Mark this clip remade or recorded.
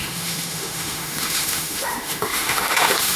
remade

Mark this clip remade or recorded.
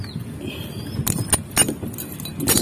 recorded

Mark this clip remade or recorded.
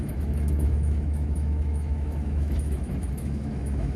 remade